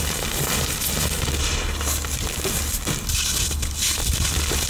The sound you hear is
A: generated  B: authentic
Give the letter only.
B